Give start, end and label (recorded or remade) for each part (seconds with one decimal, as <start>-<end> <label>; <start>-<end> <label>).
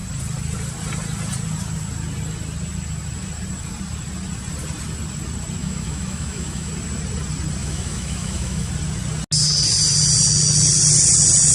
0.0-5.6 recorded; 5.6-6.7 remade; 6.7-7.6 recorded; 7.6-8.7 remade; 8.7-11.5 recorded